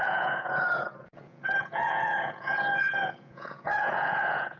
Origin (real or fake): fake